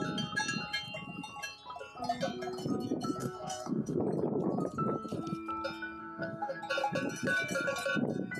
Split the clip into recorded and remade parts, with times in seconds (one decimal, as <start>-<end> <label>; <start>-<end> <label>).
0.0-3.2 recorded; 3.2-4.0 remade; 4.0-6.0 recorded; 6.0-6.6 remade; 6.6-8.4 recorded